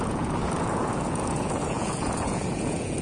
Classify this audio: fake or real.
fake